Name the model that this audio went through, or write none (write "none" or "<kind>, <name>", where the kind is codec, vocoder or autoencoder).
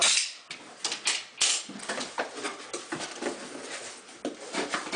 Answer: none